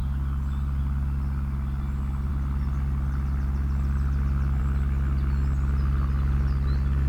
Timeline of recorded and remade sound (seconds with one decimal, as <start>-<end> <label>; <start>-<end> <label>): 0.0-7.1 recorded